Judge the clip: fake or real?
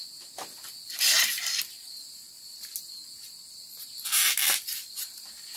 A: real